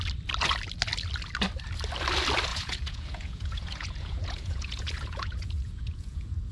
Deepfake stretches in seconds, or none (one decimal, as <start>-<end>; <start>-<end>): 2.5-6.5

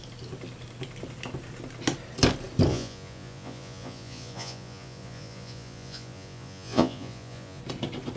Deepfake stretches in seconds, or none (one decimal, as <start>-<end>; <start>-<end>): 2.7-7.6

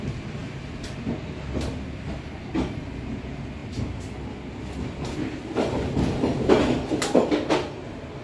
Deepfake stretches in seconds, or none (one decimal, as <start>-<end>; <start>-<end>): none

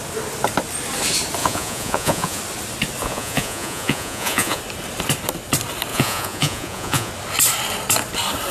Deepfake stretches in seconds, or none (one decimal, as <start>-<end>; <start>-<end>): 1.4-2.4; 3.0-4.6; 5.9-7.1

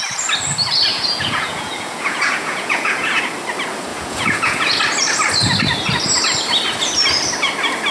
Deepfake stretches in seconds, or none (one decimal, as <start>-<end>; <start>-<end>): 0.9-3.2; 3.9-4.8

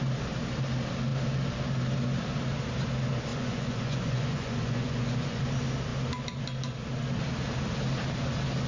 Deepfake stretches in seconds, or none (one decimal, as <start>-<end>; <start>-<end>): 3.3-5.4

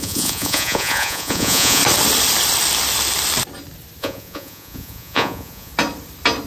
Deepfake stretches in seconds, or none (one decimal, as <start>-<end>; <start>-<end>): 0.0-1.8; 4.0-5.7